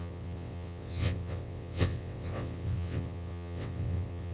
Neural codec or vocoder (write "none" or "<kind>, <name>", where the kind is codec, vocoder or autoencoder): vocoder, WaveNeXt